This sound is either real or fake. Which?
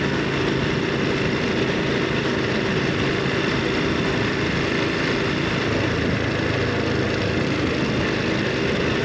real